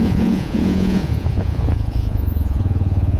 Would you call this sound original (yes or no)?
no